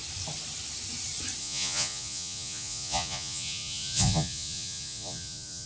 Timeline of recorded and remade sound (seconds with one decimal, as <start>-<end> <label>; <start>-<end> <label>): 0.0-1.4 recorded; 1.4-5.7 remade

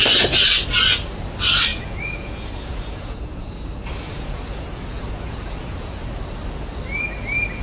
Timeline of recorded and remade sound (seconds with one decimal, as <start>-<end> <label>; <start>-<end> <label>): 0.0-1.7 recorded; 1.7-6.0 remade; 6.0-7.6 recorded